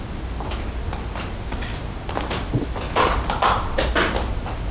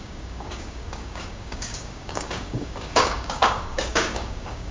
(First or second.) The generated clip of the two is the second